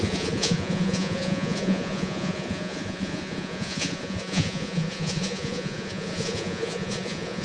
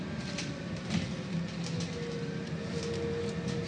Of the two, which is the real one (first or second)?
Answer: second